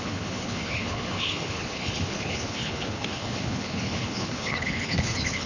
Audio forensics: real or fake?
fake